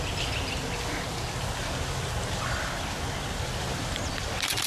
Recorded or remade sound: recorded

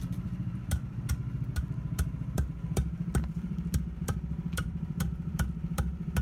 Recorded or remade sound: remade